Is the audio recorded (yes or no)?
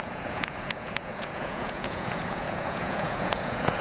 no